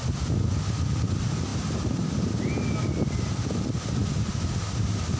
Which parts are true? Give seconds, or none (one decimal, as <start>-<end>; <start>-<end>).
0.0-5.2